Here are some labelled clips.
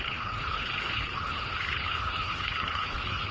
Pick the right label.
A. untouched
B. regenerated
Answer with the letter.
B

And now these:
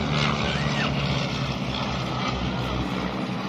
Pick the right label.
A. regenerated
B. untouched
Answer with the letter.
B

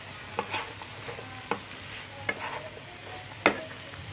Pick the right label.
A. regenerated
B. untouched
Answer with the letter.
B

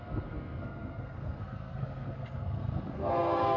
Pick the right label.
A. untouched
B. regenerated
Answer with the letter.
B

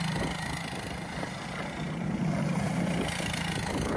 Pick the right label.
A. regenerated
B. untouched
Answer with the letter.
B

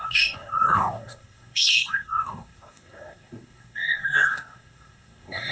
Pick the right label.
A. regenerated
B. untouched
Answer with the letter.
A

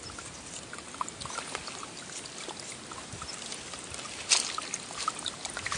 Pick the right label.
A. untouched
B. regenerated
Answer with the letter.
B